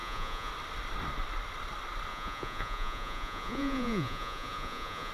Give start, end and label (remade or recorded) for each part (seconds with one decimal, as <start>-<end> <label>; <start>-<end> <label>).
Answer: 0.0-0.5 remade; 0.5-2.1 recorded; 2.1-5.1 remade